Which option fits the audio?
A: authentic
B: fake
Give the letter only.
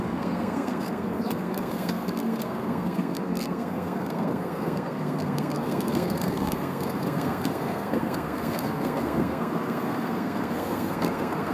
B